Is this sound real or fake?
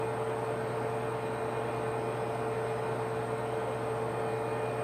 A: real